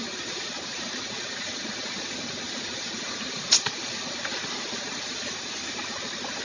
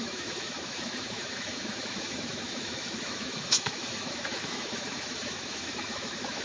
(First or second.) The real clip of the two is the first